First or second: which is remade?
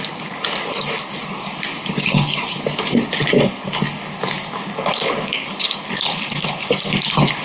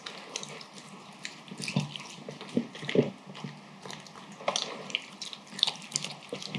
first